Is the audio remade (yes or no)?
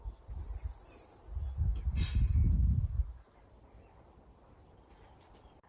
no